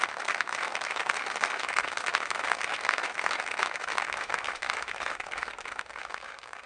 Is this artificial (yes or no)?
yes